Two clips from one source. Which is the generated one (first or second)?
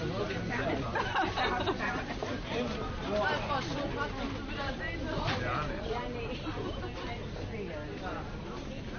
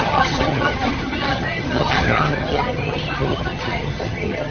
second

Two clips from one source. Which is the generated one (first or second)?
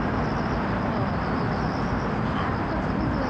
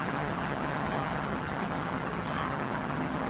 second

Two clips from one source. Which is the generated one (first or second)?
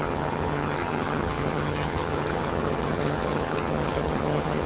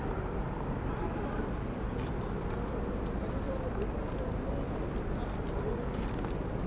first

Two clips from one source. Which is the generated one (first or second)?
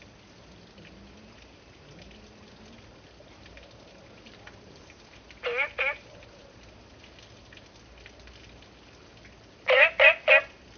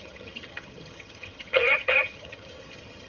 second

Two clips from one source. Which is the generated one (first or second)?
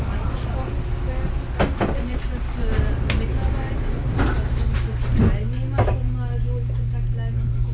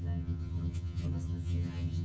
second